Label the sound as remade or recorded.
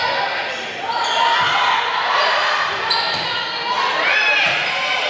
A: recorded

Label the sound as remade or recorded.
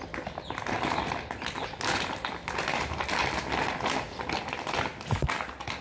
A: recorded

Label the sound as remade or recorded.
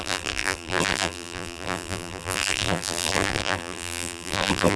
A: remade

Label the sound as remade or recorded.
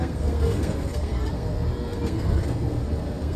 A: remade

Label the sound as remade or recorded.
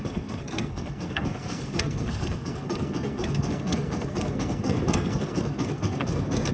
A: remade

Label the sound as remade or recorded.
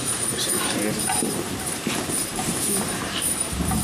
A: remade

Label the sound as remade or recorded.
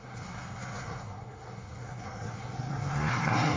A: remade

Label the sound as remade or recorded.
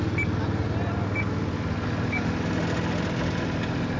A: recorded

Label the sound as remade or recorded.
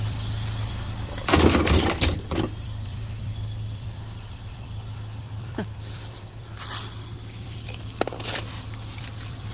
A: remade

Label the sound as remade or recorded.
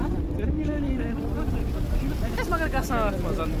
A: recorded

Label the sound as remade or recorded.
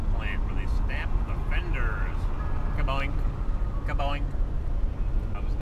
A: recorded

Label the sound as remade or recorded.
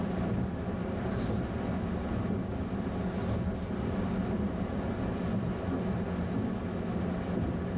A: recorded